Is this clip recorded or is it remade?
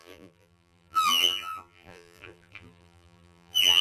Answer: remade